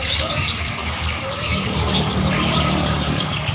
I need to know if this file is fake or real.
fake